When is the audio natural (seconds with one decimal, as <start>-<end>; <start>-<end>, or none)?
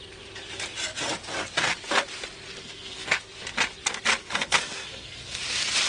0.0-2.6; 3.2-4.2; 5.4-5.9